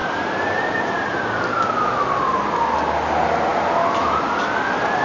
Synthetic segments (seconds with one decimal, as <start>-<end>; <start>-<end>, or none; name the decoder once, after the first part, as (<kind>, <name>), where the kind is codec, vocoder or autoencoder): 0.0-1.7 (vocoder, BigVGAN v2)